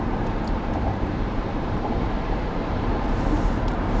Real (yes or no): no